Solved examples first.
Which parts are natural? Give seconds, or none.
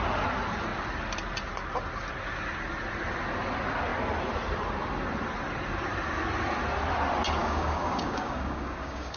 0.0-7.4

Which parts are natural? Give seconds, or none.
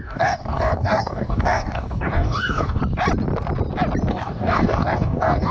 2.8-4.1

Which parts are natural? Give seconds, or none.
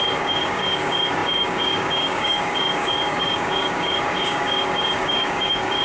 none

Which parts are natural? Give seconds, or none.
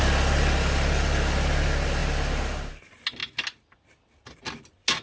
0.0-5.0